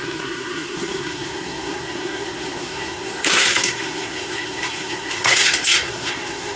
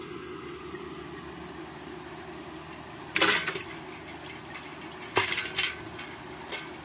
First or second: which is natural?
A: second